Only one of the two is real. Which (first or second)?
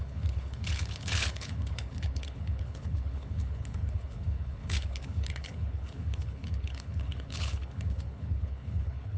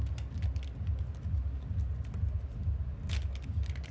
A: second